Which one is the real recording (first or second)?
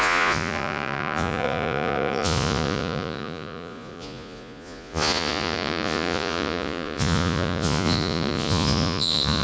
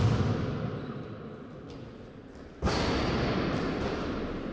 second